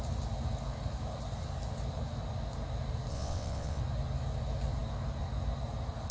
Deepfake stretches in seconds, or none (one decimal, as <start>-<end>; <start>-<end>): 3.1-3.8

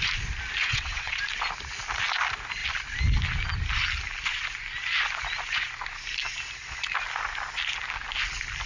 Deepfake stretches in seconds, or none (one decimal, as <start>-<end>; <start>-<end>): 0.6-1.2

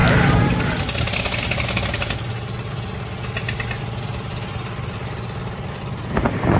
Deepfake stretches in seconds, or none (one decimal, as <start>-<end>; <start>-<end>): none

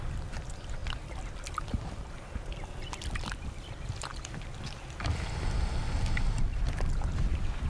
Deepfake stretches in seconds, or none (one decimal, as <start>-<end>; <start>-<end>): none

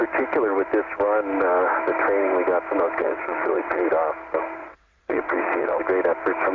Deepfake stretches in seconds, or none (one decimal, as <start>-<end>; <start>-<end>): 3.0-3.9; 4.6-5.8

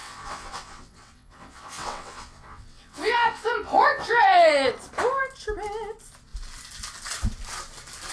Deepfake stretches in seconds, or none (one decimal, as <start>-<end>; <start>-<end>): 0.0-4.5

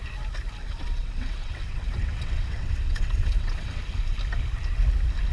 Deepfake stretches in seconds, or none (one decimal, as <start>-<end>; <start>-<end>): 0.6-3.8

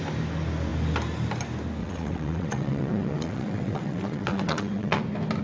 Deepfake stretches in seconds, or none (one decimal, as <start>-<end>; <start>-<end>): 1.8-5.0